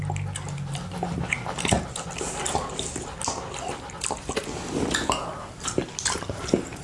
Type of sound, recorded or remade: recorded